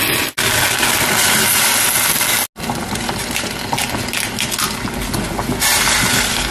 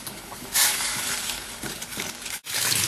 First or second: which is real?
first